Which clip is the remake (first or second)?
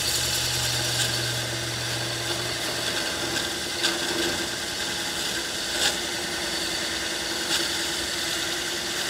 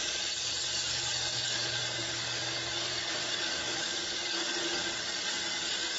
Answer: second